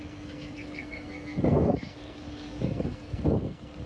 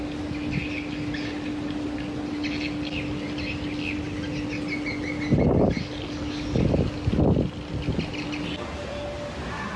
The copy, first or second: first